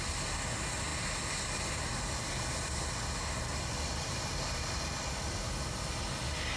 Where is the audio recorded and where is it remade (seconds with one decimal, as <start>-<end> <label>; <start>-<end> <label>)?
0.0-3.5 recorded; 3.5-5.1 remade; 5.1-6.6 recorded